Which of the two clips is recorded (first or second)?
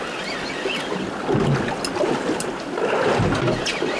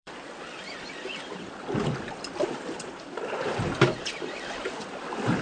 first